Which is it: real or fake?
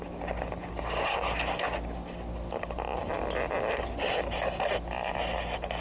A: real